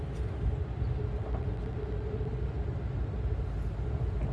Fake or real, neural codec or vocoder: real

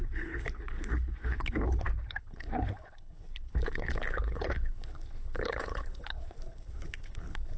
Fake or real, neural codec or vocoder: fake, codec, HILCodec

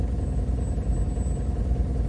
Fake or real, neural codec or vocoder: real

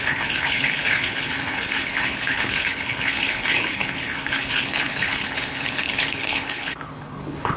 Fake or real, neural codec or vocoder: fake, codec, HILCodec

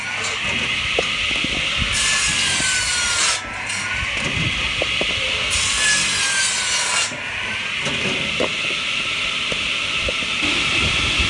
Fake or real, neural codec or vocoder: real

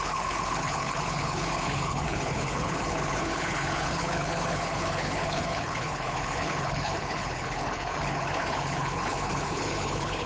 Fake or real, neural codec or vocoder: fake, codec, HILCodec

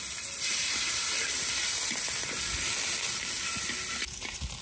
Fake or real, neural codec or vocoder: real